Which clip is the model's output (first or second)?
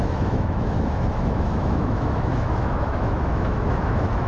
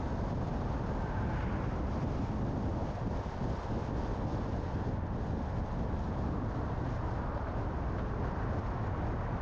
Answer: first